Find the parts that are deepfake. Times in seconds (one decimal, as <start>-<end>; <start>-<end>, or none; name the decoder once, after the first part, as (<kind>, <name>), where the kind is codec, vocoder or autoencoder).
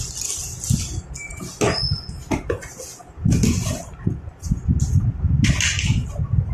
none